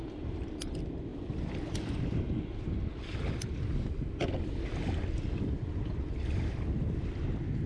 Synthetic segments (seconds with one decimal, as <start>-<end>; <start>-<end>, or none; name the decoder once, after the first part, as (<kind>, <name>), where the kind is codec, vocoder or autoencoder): none

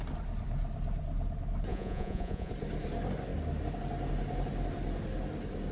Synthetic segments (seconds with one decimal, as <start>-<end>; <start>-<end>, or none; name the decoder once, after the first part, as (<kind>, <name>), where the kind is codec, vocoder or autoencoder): 1.7-2.5 (vocoder, Vocos)

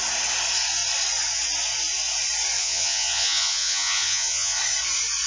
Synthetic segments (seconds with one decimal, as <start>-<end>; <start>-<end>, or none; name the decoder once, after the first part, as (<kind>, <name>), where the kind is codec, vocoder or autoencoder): 2.6-4.6 (vocoder, Vocos)

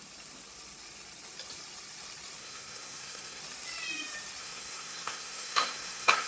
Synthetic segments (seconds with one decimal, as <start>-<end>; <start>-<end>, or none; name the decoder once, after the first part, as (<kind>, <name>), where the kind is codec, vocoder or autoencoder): 2.4-3.4 (codec, SNAC); 4.4-6.3

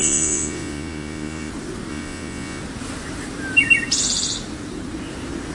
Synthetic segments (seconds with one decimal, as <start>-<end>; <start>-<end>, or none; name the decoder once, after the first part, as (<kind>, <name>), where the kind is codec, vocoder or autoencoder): 0.0-1.5 (vocoder, Vocos); 1.9-2.6

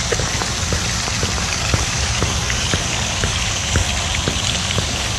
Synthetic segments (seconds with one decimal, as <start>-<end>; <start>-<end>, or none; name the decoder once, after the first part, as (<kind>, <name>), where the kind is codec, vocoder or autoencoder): 0.0-0.4 (codec, DAC); 1.4-3.9; 4.5-5.2

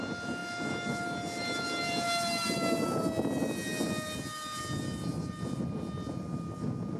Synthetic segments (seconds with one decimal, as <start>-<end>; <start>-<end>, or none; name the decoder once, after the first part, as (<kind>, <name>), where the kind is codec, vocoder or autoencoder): none